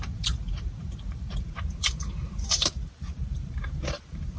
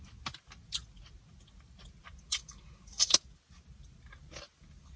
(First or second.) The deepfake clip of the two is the first